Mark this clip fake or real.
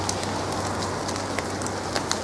real